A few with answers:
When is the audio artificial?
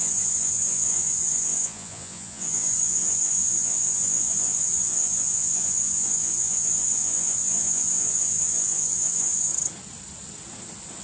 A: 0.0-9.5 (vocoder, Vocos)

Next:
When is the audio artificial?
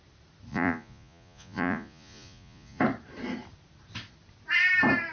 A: 0.5-2.8 (vocoder, Vocos)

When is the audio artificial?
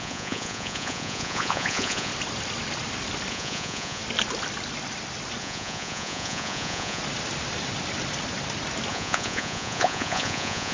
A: 0.0-2.1 (vocoder, Vocos); 3.3-4.0; 5.4-7.0; 8.9-10.7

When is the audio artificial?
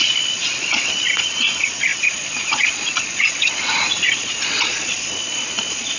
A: 0.0-6.0 (vocoder, Vocos)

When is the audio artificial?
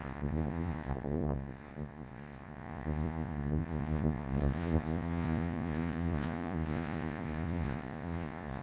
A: 0.0-8.6 (vocoder, Vocos)